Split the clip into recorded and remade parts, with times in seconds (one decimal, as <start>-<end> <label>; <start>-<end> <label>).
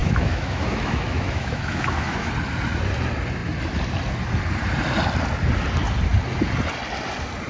0.0-2.3 remade; 2.3-7.5 recorded